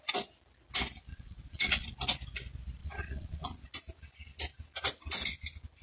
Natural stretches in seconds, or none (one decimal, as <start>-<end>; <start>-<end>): 0.0-1.1; 1.9-2.8; 3.7-5.8